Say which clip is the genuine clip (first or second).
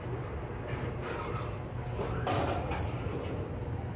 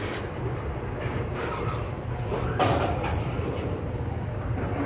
first